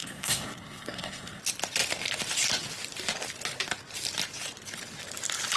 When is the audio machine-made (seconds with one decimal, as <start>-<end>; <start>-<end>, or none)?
0.0-1.4